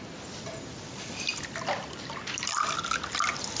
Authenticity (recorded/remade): recorded